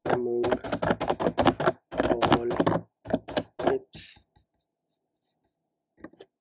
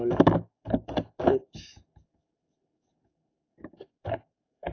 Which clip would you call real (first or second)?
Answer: first